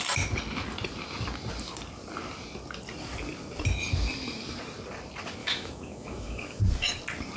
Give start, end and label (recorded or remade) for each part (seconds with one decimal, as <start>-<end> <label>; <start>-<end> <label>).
0.0-5.4 recorded; 5.4-6.6 remade; 6.6-7.4 recorded